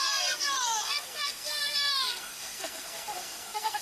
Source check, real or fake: fake